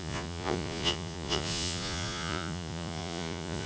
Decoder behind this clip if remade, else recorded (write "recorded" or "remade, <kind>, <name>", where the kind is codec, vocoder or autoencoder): remade, vocoder, Vocos